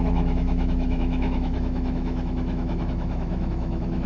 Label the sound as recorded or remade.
remade